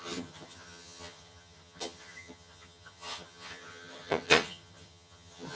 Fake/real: fake